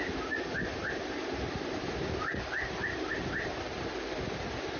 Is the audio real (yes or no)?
yes